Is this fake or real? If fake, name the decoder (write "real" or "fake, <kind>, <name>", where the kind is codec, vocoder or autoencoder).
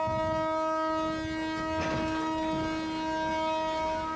real